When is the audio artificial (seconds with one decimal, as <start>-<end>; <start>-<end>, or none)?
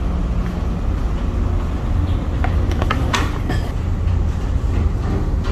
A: none